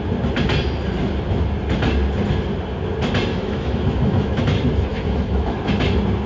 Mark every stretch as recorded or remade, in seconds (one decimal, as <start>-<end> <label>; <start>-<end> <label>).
0.0-3.3 recorded; 3.3-4.4 remade; 4.4-4.9 recorded; 4.9-5.7 remade; 5.7-6.3 recorded